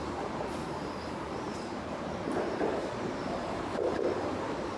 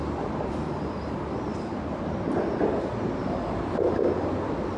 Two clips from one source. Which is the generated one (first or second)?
first